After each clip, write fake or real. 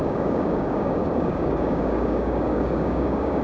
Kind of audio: fake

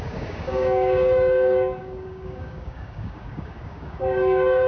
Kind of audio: fake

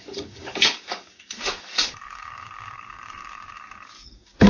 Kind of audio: fake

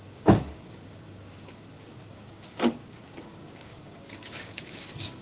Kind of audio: fake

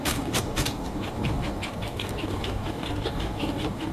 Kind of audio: fake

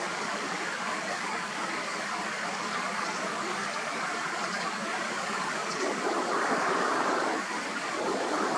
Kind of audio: fake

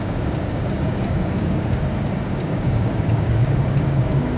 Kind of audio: fake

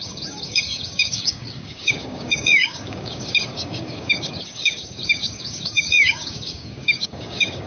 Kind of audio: fake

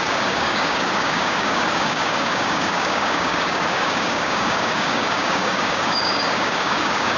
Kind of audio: fake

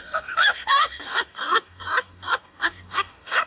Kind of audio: fake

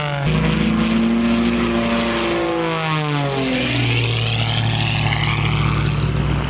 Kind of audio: real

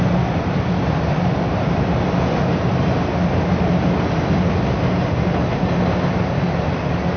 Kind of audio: real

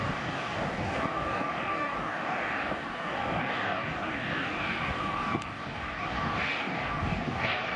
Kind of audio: fake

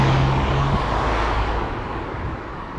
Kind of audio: fake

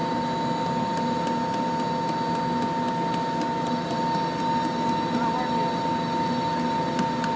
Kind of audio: real